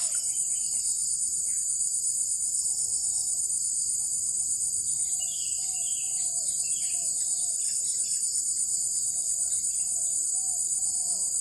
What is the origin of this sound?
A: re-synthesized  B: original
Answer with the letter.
A